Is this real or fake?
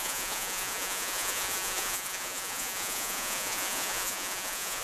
fake